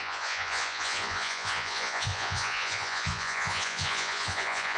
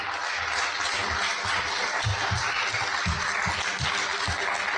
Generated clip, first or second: first